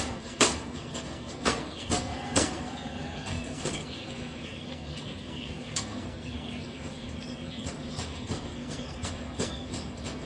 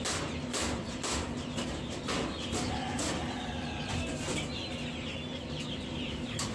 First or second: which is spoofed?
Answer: first